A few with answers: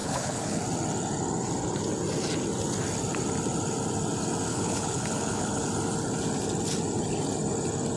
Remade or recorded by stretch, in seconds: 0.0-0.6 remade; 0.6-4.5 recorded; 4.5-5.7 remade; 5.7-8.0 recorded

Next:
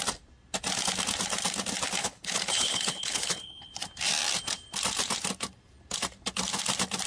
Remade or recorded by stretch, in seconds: 0.0-2.0 recorded; 2.0-3.7 remade; 3.7-7.1 recorded

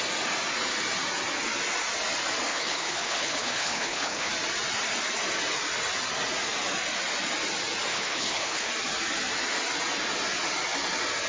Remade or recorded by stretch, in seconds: 0.0-2.5 recorded; 2.5-4.3 remade; 4.3-7.9 recorded; 7.9-8.7 remade; 8.7-11.3 recorded

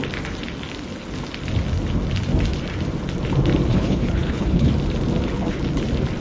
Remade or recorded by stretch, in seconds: 0.0-3.7 recorded; 3.7-4.7 remade; 4.7-6.2 recorded

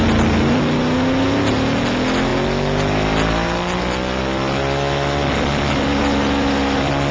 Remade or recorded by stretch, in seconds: 0.0-7.1 recorded

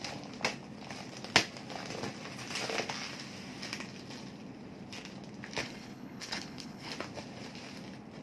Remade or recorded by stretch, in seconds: 0.0-5.6 recorded; 5.6-6.9 remade; 6.9-8.2 recorded

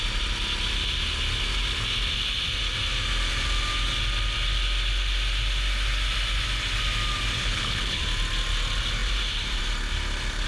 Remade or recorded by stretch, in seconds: 0.0-7.4 recorded; 7.4-8.0 remade; 8.0-10.5 recorded